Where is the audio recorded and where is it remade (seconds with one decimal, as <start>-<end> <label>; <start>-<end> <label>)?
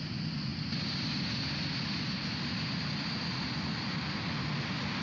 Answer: 0.0-5.0 recorded